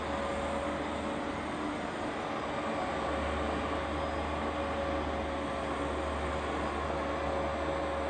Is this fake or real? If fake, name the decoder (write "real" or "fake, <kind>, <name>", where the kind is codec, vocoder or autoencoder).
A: real